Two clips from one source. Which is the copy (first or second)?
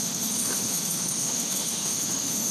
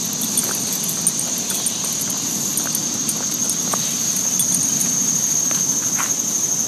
first